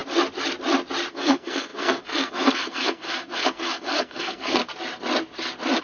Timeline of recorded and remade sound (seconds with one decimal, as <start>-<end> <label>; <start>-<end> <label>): 0.0-1.1 recorded; 1.1-4.6 remade; 4.6-5.8 recorded